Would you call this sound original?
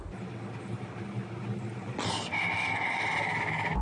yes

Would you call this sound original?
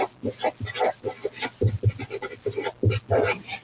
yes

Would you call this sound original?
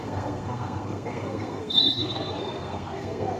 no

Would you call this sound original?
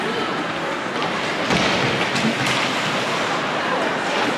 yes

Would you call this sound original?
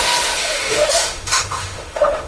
no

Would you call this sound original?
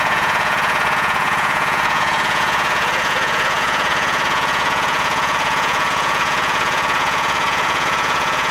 no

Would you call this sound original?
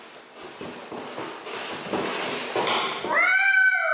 yes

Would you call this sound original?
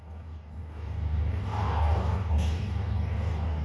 no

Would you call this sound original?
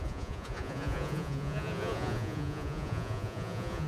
no